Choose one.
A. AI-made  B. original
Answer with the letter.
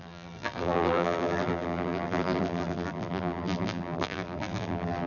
A